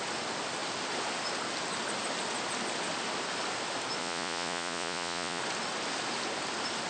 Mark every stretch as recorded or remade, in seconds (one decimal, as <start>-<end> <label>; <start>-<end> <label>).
0.0-4.0 recorded; 4.0-5.4 remade; 5.4-6.9 recorded